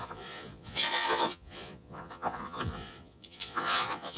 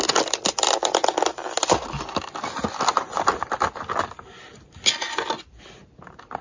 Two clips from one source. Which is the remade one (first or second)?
first